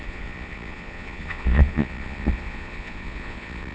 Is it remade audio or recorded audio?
remade